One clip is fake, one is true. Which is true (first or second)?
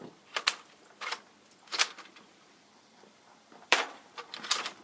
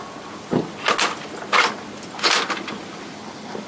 second